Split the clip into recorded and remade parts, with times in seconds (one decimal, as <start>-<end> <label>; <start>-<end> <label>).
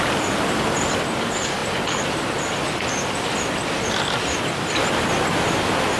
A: 0.0-6.0 recorded